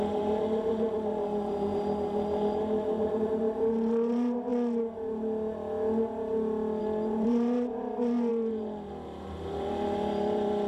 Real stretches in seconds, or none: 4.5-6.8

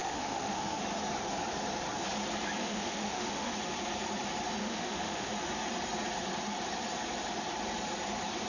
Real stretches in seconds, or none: 0.8-2.6; 3.5-4.6; 5.3-8.5

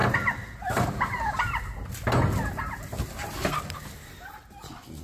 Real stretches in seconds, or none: 0.0-5.0

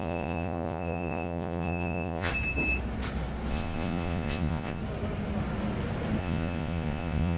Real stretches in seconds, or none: 2.3-3.5; 4.8-6.2

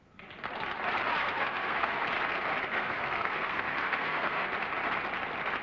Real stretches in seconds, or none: 0.0-1.2; 2.0-2.7; 4.5-5.6

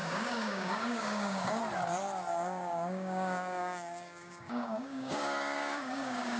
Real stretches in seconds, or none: 1.6-2.3

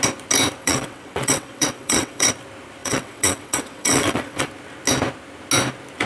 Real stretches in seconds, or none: 0.0-0.6; 2.3-2.8; 4.5-6.1